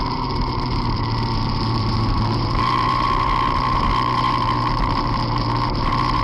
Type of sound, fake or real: fake